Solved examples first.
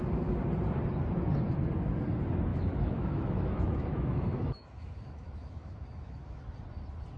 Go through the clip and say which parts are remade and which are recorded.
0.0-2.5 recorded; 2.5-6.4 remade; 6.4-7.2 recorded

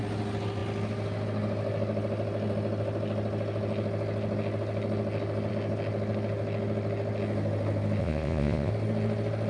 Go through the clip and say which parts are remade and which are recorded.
0.0-8.0 recorded; 8.0-8.7 remade; 8.7-9.5 recorded

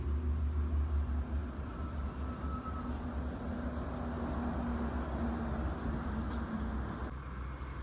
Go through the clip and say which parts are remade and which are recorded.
0.0-7.8 recorded

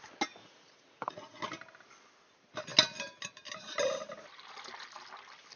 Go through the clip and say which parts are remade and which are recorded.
0.0-0.4 recorded; 0.4-1.4 remade; 1.4-5.6 recorded

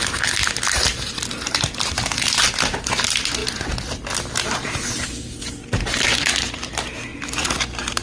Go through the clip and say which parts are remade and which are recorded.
0.0-7.1 recorded; 7.1-7.6 remade; 7.6-8.0 recorded

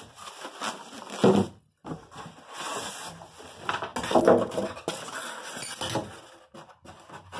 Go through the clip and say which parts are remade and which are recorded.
0.0-7.4 recorded